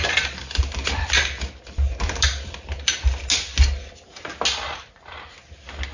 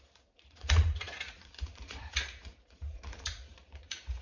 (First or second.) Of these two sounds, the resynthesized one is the second